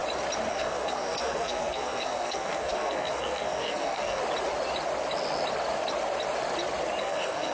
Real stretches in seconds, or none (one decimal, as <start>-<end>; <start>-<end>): 0.0-0.5; 4.2-7.0